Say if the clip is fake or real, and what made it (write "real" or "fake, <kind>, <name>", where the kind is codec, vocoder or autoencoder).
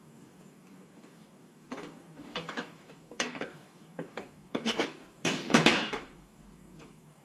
fake, codec, DAC